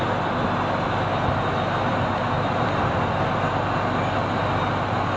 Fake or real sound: real